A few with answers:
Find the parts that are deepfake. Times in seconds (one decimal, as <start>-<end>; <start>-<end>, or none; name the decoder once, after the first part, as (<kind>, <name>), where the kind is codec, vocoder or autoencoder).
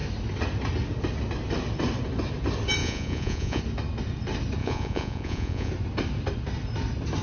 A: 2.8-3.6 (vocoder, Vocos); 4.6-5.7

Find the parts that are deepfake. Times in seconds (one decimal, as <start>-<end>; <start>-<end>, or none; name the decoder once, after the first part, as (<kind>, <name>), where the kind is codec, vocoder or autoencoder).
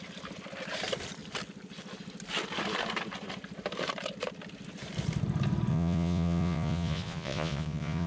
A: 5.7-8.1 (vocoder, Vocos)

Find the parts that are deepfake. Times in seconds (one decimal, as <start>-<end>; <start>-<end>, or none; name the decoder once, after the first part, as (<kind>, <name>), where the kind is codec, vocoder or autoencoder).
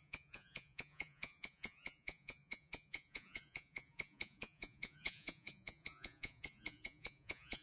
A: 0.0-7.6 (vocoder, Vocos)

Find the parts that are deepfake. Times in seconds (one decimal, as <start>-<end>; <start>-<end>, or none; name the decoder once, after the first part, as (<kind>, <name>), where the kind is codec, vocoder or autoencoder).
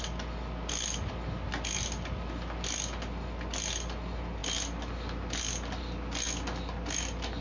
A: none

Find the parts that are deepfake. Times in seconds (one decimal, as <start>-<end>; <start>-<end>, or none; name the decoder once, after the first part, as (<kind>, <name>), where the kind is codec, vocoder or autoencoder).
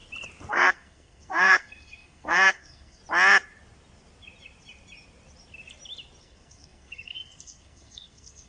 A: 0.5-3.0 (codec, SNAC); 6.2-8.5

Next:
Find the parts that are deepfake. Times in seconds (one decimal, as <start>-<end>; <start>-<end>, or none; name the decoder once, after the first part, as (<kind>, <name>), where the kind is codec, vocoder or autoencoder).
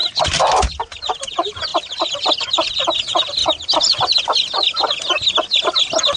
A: none